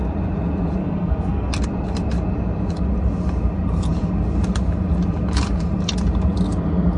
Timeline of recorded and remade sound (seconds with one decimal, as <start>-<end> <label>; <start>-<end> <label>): 0.0-0.8 recorded; 0.8-1.5 remade; 1.5-7.0 recorded